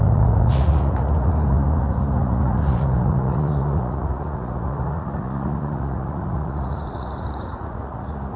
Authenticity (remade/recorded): remade